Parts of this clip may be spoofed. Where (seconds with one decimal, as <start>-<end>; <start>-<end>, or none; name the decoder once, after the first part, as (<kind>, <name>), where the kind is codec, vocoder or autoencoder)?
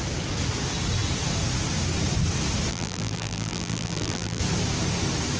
2.7-4.4 (vocoder, BigVGAN v2)